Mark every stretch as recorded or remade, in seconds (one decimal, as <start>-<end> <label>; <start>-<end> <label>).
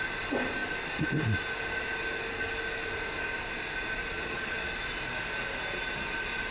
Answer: 0.0-4.0 recorded; 4.0-4.7 remade; 4.7-6.5 recorded